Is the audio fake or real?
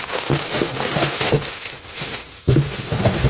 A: fake